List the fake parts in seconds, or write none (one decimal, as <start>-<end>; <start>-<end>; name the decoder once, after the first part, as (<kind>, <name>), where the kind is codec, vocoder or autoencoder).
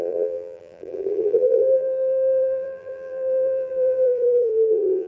0.0-5.1 (vocoder, BigVGAN v2)